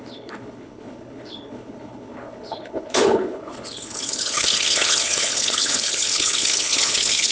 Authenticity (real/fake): fake